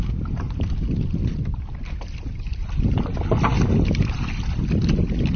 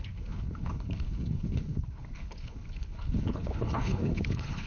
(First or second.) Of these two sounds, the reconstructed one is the second